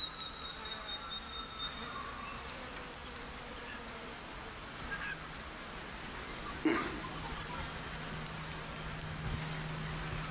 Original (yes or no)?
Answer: yes